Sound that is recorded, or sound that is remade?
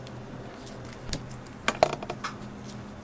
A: recorded